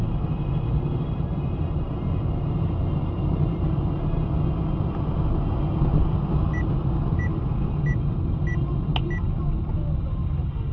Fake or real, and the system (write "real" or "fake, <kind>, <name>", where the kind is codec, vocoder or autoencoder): real